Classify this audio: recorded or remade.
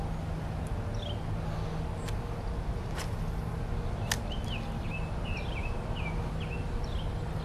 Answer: recorded